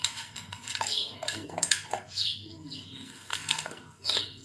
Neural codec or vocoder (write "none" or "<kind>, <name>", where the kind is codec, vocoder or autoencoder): codec, SNAC